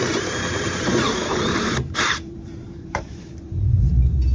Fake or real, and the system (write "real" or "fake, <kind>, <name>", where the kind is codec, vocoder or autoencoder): fake, vocoder, BigVGAN v2